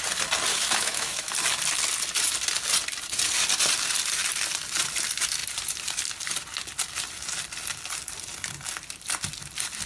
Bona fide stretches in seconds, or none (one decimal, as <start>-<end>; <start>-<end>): 0.0-0.5; 1.3-9.9